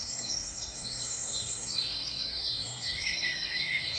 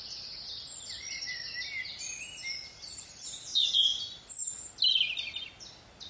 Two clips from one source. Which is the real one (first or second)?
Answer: second